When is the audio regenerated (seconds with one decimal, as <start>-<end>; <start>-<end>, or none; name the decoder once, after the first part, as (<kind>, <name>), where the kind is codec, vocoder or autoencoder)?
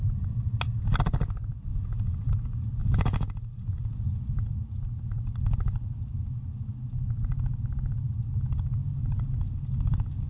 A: 1.7-2.3 (vocoder, Vocos); 2.8-4.5; 8.8-10.3